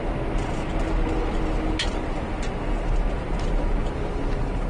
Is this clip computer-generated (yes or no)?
no